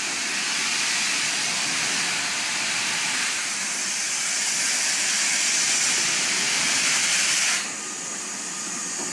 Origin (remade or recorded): recorded